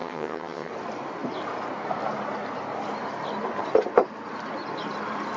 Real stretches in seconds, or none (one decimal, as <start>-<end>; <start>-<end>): 0.7-5.4